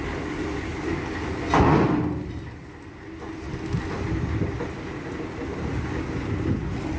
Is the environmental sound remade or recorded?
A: recorded